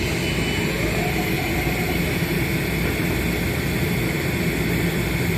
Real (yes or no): yes